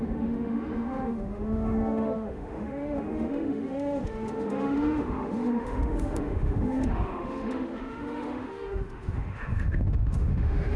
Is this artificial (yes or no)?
yes